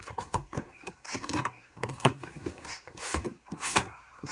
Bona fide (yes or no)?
no